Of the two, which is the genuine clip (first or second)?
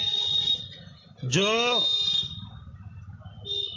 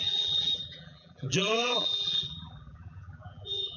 first